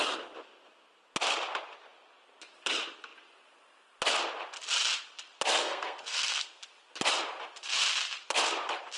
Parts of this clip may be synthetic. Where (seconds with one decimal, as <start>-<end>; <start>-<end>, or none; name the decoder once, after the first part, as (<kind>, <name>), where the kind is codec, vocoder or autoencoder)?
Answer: 5.6-6.6 (codec, SNAC)